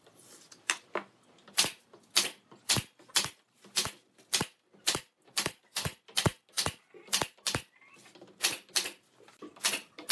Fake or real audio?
real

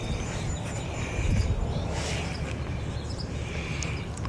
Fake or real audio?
real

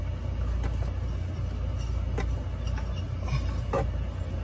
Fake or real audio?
real